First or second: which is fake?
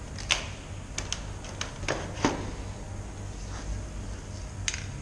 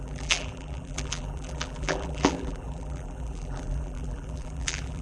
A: second